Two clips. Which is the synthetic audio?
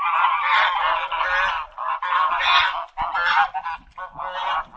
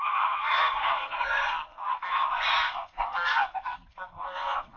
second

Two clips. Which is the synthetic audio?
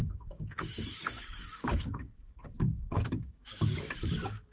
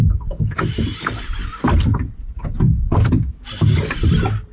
first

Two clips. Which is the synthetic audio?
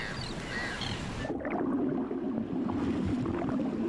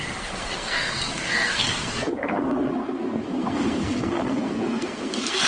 second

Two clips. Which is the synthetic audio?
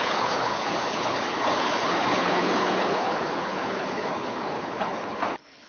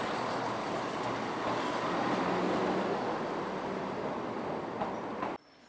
first